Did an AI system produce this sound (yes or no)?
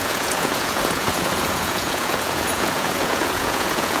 yes